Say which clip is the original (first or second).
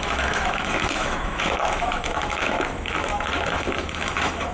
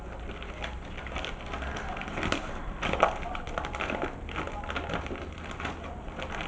second